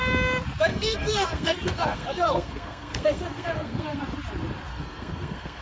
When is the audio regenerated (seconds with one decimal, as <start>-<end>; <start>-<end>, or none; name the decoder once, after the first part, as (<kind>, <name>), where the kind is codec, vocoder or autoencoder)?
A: 0.7-4.0 (codec, SNAC); 4.7-5.6